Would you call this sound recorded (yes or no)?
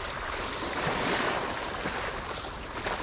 yes